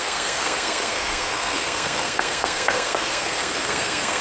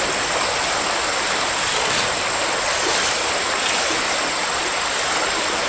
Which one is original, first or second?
second